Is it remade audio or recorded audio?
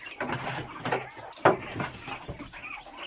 recorded